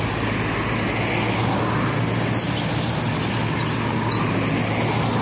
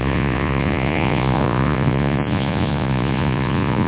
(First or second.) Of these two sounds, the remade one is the second